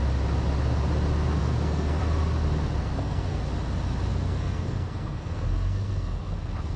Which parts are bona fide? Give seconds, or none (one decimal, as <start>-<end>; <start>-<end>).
0.0-1.4; 2.0-2.8; 3.4-4.1